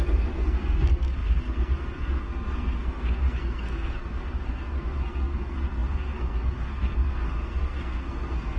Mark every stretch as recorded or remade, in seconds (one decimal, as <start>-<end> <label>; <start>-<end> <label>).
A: 0.0-8.6 remade